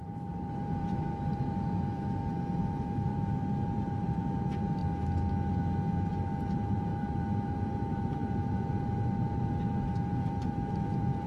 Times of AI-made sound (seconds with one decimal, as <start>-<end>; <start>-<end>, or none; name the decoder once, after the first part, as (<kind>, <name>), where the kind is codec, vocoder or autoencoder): 0.0-4.8 (vocoder, BigVGAN v2); 6.1-11.3

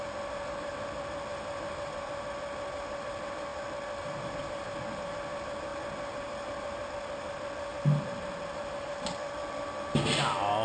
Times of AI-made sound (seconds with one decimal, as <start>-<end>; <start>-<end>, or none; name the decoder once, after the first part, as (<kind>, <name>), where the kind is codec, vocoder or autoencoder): 1.3-2.0 (vocoder, BigVGAN v2); 7.7-8.9

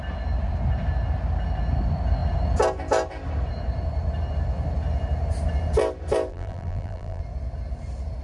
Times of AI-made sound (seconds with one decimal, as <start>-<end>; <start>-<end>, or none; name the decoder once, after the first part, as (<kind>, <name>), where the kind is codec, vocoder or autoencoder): 6.3-7.2 (vocoder, BigVGAN v2)

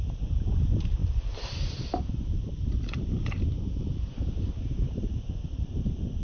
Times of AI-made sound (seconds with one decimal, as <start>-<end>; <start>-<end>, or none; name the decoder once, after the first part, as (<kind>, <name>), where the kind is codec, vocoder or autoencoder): 0.0-6.2 (vocoder, BigVGAN v2)

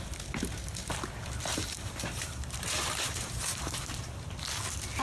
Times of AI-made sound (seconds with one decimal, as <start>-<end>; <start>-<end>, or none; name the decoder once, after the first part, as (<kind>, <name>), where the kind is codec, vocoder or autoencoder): 1.5-4.0 (vocoder, BigVGAN v2)

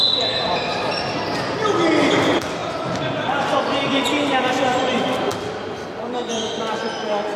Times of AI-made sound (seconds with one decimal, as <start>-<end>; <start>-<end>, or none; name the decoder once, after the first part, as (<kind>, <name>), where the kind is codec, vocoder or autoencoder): 5.3-6.4 (vocoder, BigVGAN v2)